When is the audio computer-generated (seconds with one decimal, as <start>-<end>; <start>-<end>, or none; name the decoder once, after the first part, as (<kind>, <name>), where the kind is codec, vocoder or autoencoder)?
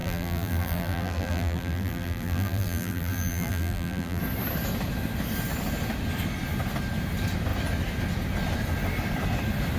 0.0-4.2 (vocoder, BigVGAN v2)